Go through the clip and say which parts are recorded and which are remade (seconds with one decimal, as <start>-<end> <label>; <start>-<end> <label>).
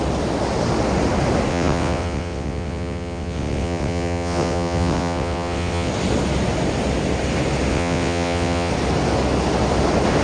0.0-1.5 recorded; 1.5-5.9 remade; 5.9-7.7 recorded; 7.7-8.7 remade; 8.7-10.2 recorded